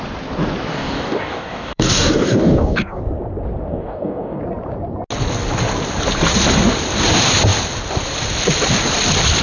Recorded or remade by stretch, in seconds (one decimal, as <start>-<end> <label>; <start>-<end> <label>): 0.0-0.7 recorded; 0.7-3.0 remade; 3.0-3.7 recorded; 3.7-4.4 remade; 4.4-9.4 recorded